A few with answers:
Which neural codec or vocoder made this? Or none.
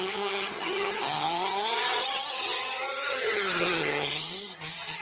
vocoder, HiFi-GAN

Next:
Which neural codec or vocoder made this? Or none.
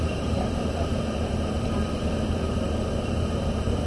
vocoder, BigVGAN v2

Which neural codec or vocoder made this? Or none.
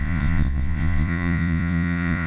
vocoder, Vocos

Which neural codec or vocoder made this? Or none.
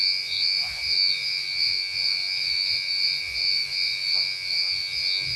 vocoder, Vocos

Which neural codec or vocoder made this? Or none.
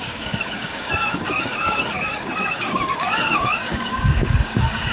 codec, DAC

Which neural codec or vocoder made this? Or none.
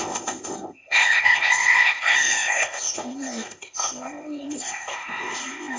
codec, ZipCodec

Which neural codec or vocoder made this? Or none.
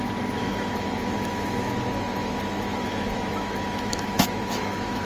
autoencoder, DAC-VAE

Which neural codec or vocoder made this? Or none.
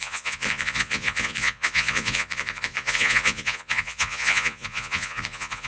vocoder, Vocos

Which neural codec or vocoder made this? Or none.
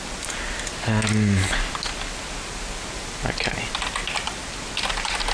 none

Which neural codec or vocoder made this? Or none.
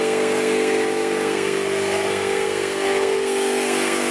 codec, SNAC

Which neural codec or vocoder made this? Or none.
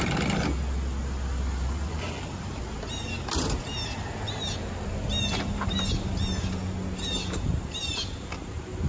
none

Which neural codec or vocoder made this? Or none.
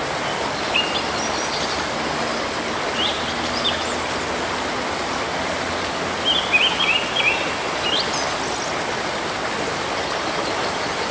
none